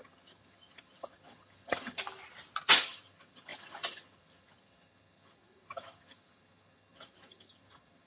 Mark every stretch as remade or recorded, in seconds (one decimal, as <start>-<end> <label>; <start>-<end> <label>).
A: 0.0-2.0 remade; 2.0-2.7 recorded; 2.7-8.1 remade